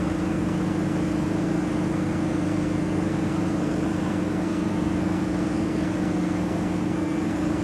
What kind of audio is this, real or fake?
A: fake